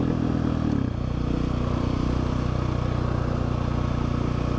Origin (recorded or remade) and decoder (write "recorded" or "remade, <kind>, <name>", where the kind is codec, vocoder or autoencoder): recorded